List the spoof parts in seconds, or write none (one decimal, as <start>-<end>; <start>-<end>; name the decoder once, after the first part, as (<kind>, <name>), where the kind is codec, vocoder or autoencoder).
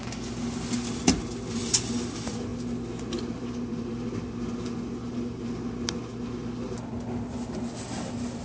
none